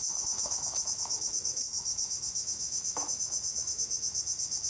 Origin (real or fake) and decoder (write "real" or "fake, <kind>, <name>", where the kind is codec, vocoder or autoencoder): fake, autoencoder, DAC-VAE